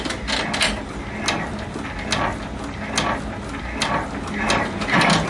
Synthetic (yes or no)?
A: no